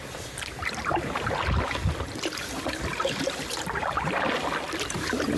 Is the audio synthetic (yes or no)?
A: no